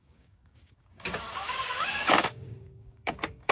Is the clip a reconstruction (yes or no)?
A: yes